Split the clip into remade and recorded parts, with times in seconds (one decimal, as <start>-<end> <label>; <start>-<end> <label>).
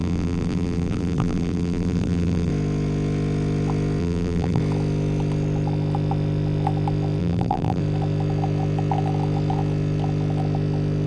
0.0-2.5 remade; 2.5-4.0 recorded; 4.0-4.6 remade; 4.6-7.2 recorded; 7.2-7.8 remade; 7.8-11.1 recorded